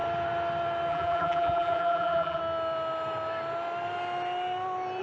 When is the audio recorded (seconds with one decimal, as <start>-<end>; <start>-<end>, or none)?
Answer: 0.0-0.9; 2.4-5.0